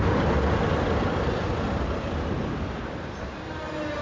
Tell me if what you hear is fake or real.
real